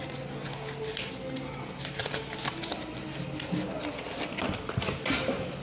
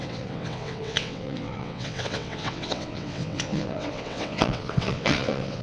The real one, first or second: first